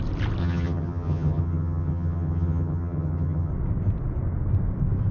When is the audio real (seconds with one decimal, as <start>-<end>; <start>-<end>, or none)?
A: 0.0-0.4; 3.5-5.1